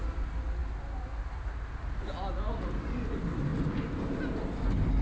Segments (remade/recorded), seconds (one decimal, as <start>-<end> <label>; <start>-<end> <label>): 0.0-5.0 recorded